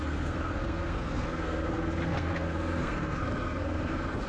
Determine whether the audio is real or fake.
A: fake